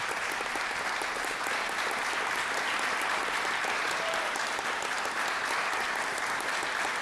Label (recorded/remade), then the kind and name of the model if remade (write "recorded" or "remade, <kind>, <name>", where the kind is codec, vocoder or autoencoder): recorded